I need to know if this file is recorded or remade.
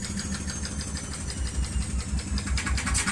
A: recorded